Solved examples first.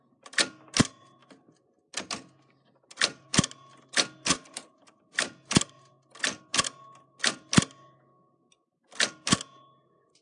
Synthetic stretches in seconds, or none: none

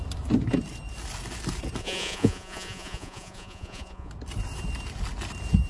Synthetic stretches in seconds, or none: 1.8-4.1 (vocoder, Vocos)